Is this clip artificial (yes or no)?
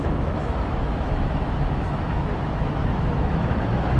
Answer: yes